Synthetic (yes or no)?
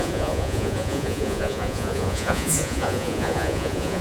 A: yes